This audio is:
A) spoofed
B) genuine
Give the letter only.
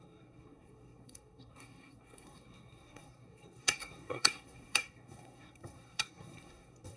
A